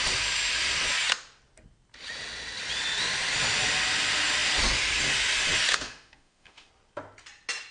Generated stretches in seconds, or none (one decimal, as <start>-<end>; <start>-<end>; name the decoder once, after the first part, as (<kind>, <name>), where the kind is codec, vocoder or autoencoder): 5.7-6.7 (autoencoder, DAC-VAE)